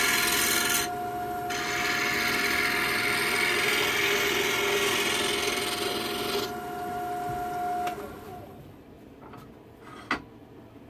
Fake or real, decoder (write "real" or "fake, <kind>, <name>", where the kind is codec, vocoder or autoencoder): real